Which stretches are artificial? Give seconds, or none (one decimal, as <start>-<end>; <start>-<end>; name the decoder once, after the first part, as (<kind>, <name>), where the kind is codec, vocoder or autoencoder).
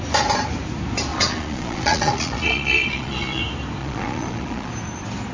1.1-3.4 (vocoder, Vocos); 3.8-4.7